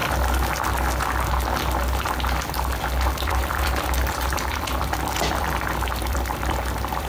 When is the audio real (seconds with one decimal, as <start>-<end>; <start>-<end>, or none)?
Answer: 0.0-3.2